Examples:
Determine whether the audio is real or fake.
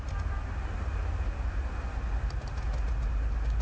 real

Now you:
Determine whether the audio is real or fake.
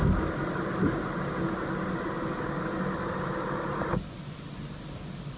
real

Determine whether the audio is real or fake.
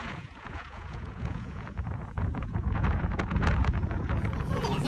fake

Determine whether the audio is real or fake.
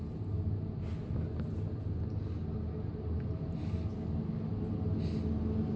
real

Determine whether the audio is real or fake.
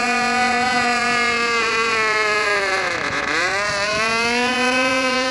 fake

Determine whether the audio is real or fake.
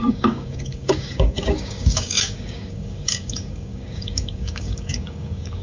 fake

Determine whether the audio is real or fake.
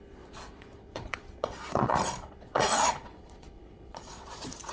fake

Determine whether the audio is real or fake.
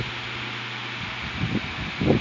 real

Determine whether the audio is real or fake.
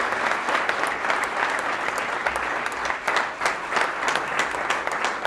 real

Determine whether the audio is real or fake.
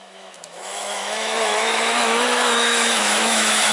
fake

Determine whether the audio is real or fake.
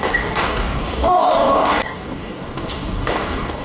fake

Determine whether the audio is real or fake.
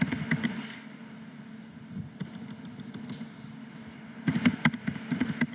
real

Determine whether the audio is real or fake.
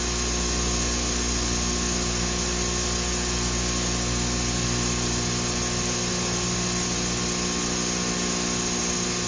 real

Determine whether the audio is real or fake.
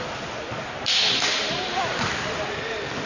real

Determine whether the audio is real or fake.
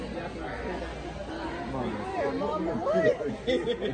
real